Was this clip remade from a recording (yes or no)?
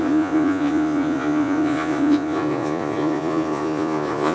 yes